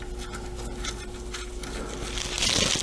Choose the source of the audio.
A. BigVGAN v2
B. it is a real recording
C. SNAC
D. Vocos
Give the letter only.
B